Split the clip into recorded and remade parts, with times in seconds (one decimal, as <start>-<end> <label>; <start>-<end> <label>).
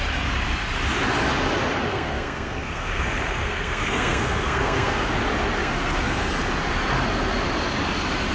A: 0.0-1.9 recorded; 1.9-5.1 remade; 5.1-5.6 recorded; 5.6-6.3 remade; 6.3-8.3 recorded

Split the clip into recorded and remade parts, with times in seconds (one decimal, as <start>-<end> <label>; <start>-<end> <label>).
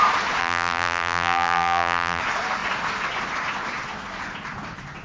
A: 0.0-0.4 recorded; 0.4-2.2 remade; 2.2-5.0 recorded